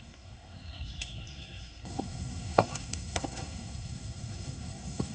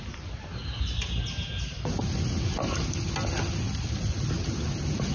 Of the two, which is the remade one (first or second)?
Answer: first